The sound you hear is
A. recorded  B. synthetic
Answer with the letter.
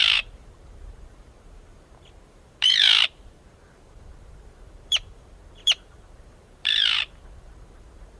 B